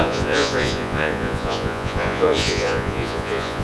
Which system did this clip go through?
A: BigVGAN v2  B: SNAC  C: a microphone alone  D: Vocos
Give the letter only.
D